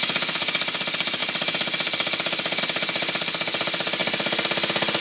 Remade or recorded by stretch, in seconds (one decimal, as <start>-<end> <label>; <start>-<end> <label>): 0.0-5.0 recorded